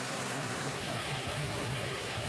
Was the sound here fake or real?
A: fake